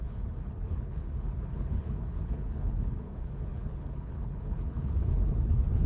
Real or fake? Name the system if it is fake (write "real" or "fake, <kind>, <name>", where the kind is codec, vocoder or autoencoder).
fake, codec, HILCodec